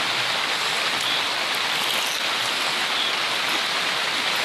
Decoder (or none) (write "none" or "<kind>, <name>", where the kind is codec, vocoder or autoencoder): none